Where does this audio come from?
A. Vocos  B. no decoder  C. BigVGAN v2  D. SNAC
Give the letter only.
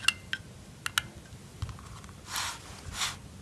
B